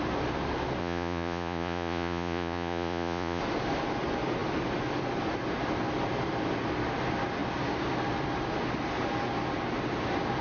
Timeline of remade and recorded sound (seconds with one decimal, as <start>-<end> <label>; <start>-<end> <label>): 0.0-0.8 recorded; 0.8-3.4 remade; 3.4-10.4 recorded